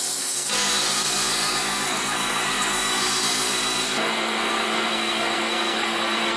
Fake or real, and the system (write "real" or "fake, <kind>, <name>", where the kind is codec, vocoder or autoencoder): fake, codec, SNAC